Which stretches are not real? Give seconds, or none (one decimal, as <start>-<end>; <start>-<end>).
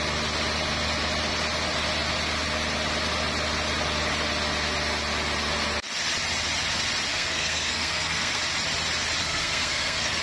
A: 7.1-8.4; 9.2-10.2